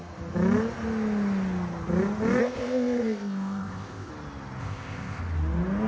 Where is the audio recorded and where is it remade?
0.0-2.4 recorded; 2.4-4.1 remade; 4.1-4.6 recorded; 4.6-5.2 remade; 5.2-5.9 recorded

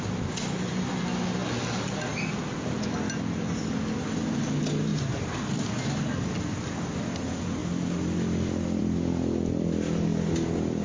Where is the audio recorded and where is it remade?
0.0-10.8 recorded

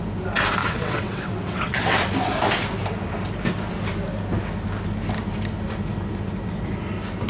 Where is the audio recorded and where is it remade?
0.0-0.6 recorded; 0.6-2.0 remade; 2.0-7.3 recorded

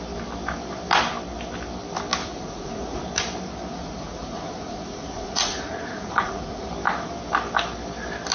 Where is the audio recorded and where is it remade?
0.0-2.2 recorded; 2.2-3.0 remade; 3.0-3.7 recorded; 3.7-6.7 remade; 6.7-8.3 recorded